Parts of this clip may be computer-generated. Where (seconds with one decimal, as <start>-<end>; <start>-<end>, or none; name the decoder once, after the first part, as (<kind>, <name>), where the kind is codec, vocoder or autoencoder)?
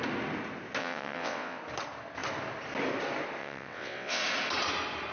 0.8-1.6 (vocoder, WaveNeXt); 3.4-4.2